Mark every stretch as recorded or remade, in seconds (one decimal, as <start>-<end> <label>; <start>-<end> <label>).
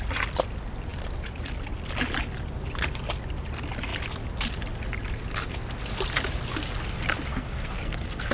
0.0-7.3 recorded; 7.3-8.3 remade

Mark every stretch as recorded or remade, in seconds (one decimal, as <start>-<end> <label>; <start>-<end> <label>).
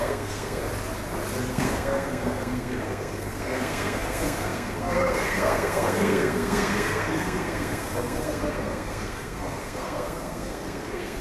0.0-0.6 remade; 0.6-1.5 recorded; 1.5-11.2 remade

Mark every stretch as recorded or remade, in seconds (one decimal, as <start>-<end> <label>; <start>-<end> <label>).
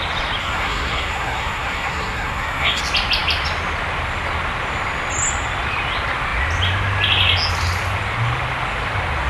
0.0-0.4 recorded; 0.4-2.8 remade; 2.8-9.3 recorded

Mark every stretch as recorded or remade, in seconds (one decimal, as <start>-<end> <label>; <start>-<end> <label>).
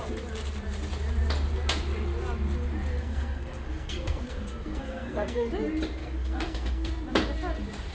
0.0-2.9 recorded; 2.9-5.5 remade; 5.5-6.0 recorded; 6.0-6.9 remade; 6.9-7.9 recorded